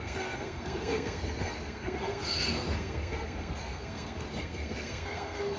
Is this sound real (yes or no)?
no